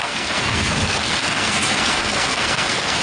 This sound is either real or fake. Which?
fake